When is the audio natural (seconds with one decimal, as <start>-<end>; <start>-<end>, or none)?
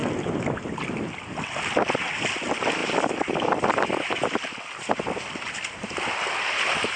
0.0-7.0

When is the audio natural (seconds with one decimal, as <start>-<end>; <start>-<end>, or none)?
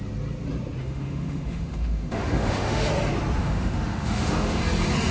0.0-0.8; 2.9-3.4; 4.6-5.1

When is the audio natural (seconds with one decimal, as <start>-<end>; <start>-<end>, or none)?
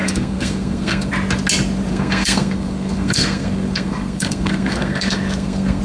1.1-1.9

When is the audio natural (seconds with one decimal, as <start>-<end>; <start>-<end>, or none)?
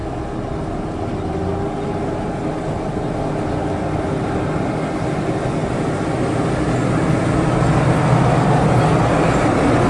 0.0-9.9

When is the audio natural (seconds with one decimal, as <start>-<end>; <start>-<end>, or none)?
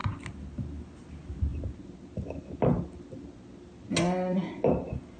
0.0-5.2